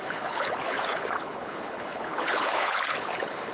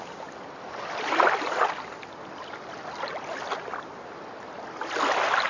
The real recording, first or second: second